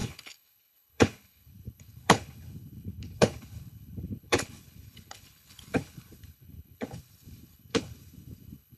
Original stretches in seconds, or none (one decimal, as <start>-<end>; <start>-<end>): none